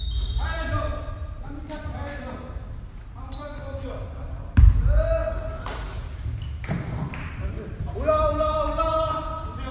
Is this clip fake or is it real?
real